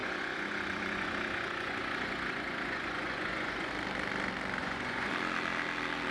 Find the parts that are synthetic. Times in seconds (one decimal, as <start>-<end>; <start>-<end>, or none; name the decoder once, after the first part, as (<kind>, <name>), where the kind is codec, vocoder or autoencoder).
0.0-3.7 (vocoder, Vocos); 4.6-5.1